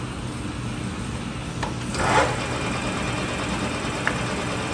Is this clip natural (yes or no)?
yes